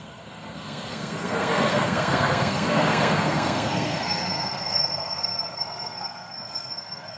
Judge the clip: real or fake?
fake